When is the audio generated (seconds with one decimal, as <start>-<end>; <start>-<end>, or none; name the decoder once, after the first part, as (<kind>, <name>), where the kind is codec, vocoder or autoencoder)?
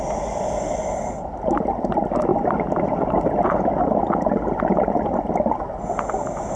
none